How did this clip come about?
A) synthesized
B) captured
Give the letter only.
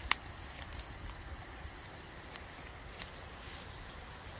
B